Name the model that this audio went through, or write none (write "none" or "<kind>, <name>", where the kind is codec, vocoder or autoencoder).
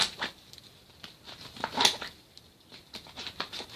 none